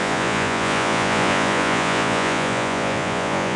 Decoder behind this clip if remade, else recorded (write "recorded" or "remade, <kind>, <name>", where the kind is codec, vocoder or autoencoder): remade, vocoder, Vocos